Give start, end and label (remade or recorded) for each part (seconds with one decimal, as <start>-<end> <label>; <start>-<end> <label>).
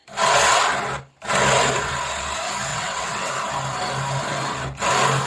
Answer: 0.0-2.7 recorded; 2.7-3.3 remade; 3.3-5.3 recorded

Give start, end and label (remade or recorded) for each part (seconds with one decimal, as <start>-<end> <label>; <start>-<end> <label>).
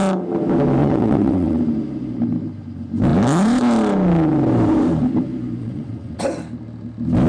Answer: 0.0-0.8 recorded; 0.8-1.6 remade; 1.6-5.6 recorded; 5.6-6.2 remade; 6.2-7.3 recorded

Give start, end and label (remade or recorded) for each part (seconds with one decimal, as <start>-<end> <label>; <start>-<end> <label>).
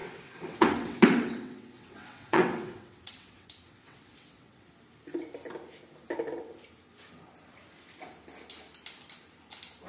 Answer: 0.0-4.7 remade; 4.7-9.9 recorded